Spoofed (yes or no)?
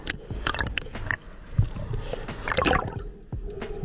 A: no